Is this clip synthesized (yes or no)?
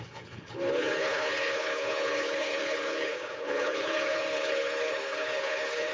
yes